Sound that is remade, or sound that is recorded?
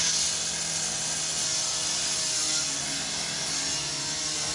recorded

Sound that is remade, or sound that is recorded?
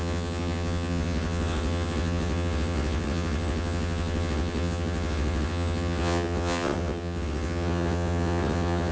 remade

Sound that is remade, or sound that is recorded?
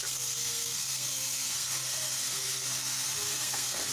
remade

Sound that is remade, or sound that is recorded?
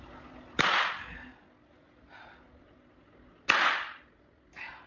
recorded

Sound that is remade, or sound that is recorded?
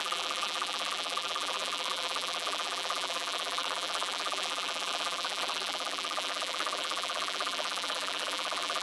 remade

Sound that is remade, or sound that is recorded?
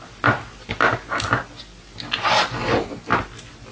recorded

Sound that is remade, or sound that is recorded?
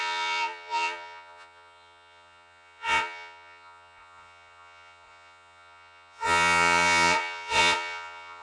remade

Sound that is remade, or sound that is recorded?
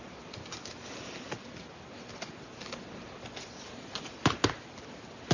recorded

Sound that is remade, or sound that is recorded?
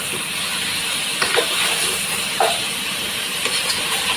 remade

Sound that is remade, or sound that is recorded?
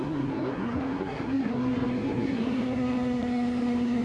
remade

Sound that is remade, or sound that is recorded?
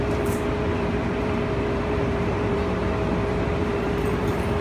remade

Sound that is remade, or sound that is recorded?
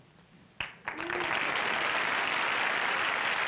recorded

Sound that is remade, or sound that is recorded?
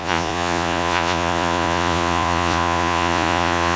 remade